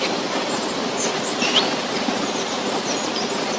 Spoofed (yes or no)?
no